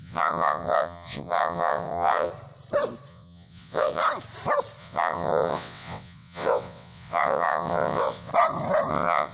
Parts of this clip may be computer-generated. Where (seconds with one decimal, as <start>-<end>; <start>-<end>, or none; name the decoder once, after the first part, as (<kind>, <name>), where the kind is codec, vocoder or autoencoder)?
0.0-2.3 (vocoder, WaveNeXt); 3.1-4.0; 4.8-8.3; 8.9-9.3